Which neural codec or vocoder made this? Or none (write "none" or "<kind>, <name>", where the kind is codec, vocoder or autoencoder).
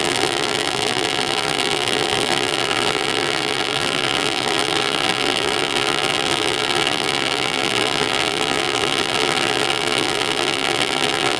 vocoder, BigVGAN v2